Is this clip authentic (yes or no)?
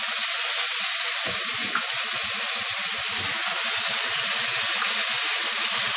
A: yes